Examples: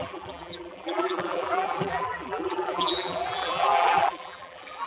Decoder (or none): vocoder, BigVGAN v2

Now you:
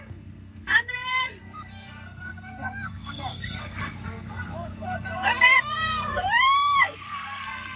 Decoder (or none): codec, SNAC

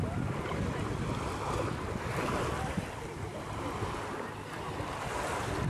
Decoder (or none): none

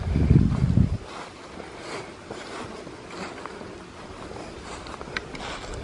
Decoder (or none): none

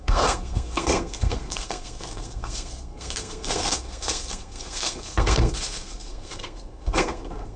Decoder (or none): codec, SNAC